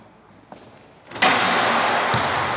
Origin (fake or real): real